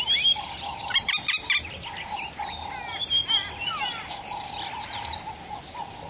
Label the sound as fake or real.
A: real